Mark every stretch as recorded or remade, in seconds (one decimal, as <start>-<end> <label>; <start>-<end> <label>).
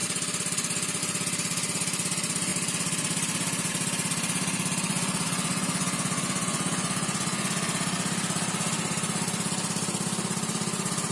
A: 0.0-4.9 recorded; 4.9-7.5 remade; 7.5-11.1 recorded